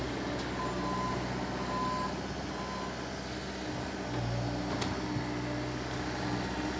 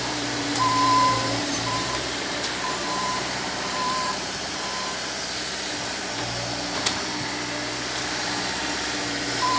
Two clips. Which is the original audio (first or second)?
first